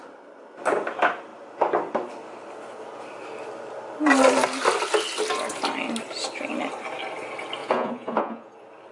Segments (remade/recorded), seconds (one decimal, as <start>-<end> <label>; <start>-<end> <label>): 0.0-7.6 recorded; 7.6-8.5 remade; 8.5-8.9 recorded